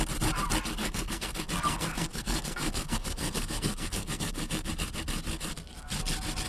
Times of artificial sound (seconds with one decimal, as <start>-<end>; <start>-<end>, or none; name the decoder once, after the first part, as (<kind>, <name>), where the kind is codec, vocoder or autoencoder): 0.8-4.7 (codec, SNAC)

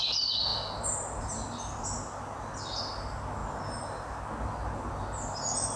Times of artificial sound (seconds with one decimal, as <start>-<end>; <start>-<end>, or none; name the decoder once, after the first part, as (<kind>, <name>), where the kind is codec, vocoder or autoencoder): none

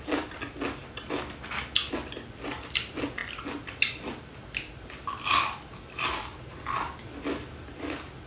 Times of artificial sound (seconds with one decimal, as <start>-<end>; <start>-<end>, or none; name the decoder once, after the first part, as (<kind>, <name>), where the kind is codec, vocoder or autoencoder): none